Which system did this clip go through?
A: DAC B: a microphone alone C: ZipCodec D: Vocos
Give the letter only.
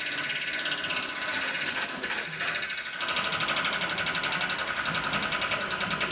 B